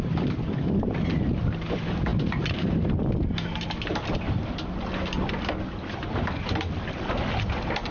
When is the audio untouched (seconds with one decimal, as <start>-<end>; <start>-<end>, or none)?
0.0-7.9